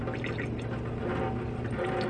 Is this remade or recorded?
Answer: recorded